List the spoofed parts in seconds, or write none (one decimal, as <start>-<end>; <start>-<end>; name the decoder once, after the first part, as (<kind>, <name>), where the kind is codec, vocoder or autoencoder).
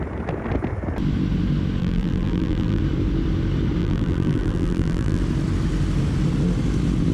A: 1.8-2.8 (vocoder, BigVGAN v2); 3.8-5.2